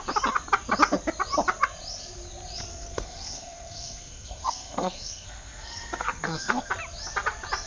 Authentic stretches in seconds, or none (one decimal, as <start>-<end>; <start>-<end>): 0.0-2.7; 6.7-7.7